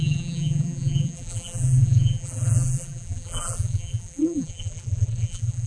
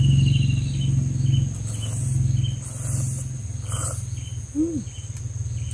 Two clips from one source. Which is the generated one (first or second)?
first